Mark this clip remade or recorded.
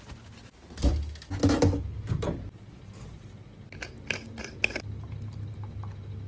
recorded